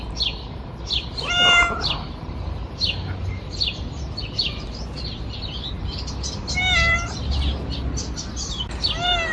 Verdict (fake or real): real